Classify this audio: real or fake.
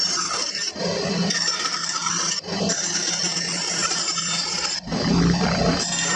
real